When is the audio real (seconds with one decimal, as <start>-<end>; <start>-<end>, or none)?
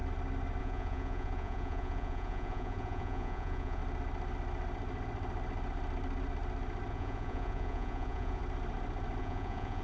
0.0-0.6; 3.8-6.9; 8.4-9.2